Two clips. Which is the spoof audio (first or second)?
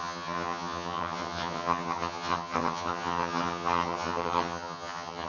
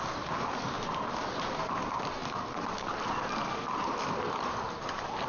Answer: first